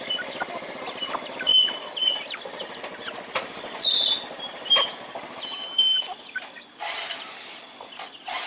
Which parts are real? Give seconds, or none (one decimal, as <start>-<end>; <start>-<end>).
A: 0.0-8.5